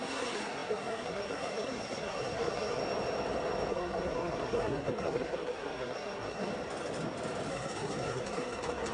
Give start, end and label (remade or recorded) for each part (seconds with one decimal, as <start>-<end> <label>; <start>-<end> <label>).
0.0-2.8 remade; 2.8-3.7 recorded; 3.7-6.5 remade; 6.5-7.5 recorded; 7.5-8.9 remade